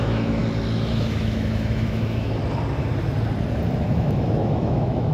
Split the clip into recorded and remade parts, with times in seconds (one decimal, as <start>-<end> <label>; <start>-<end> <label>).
0.0-0.4 remade; 0.4-0.9 recorded; 0.9-2.4 remade; 2.4-3.8 recorded; 3.8-5.1 remade

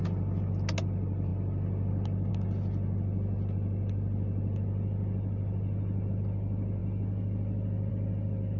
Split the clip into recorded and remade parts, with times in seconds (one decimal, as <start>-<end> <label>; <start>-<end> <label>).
0.0-8.6 recorded

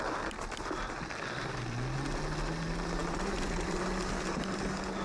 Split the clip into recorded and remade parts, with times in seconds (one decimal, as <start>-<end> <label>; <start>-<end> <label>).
0.0-5.0 recorded

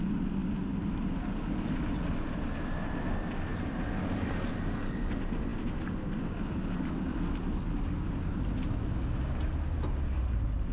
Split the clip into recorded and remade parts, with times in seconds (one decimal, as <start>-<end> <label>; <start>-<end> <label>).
0.0-3.5 recorded; 3.5-4.5 remade; 4.5-10.7 recorded

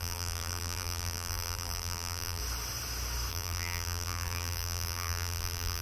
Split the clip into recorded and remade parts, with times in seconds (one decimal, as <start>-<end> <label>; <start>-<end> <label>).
0.0-2.4 remade; 2.4-3.3 recorded; 3.3-5.8 remade

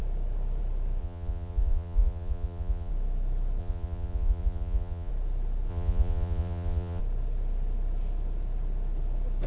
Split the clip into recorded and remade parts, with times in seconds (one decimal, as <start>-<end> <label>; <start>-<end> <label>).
0.0-1.0 recorded; 1.0-2.9 remade; 2.9-3.6 recorded; 3.6-5.1 remade; 5.1-5.7 recorded; 5.7-7.0 remade; 7.0-9.5 recorded

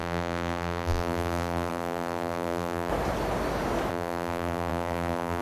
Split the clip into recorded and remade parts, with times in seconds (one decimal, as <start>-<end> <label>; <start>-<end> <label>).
0.0-2.9 remade; 2.9-3.9 recorded; 3.9-5.4 remade

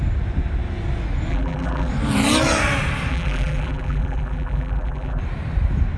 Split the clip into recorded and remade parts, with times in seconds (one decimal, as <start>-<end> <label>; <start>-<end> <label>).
0.0-1.3 recorded; 1.3-1.9 remade; 1.9-3.1 recorded; 3.1-5.2 remade; 5.2-6.0 recorded